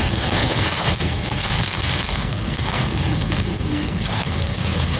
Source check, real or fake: fake